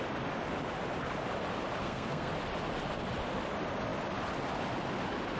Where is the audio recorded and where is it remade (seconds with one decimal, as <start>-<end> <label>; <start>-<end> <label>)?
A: 0.0-1.8 recorded; 1.8-2.3 remade; 2.3-5.4 recorded